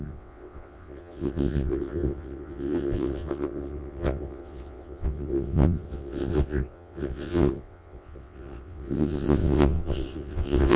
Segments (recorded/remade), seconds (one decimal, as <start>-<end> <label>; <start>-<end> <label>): 0.0-10.8 remade